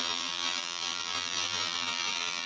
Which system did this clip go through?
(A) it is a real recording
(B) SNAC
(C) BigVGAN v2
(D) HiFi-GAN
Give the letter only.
C